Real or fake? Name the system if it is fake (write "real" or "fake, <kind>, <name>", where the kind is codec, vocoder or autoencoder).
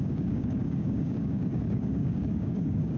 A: fake, codec, DAC